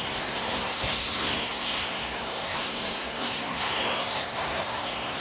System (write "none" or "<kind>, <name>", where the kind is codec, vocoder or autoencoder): codec, SNAC